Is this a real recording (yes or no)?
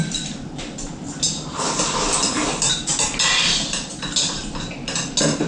yes